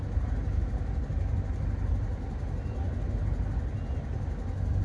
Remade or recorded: recorded